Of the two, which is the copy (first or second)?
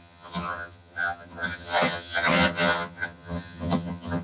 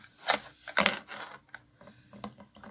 first